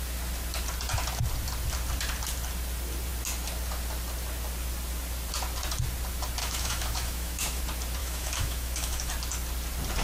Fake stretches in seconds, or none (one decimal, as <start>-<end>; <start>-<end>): 6.4-7.6; 8.0-9.1